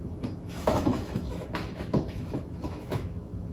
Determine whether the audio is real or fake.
fake